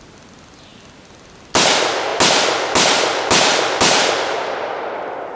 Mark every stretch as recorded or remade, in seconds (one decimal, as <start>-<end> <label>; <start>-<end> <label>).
0.0-5.4 recorded